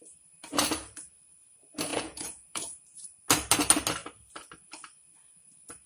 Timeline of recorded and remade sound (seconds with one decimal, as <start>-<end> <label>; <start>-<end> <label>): 0.0-1.9 recorded; 1.9-2.8 remade; 2.8-5.9 recorded